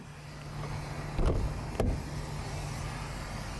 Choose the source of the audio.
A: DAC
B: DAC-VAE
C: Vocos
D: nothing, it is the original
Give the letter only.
D